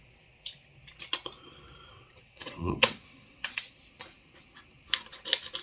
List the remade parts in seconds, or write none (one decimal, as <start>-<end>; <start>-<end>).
1.9-3.6